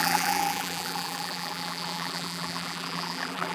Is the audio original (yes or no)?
no